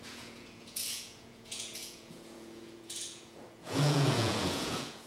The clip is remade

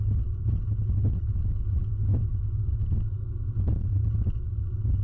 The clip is recorded